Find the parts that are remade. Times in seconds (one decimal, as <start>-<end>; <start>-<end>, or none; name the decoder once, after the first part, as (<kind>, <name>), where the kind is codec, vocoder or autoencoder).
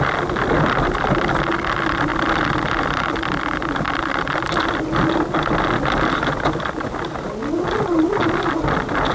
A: none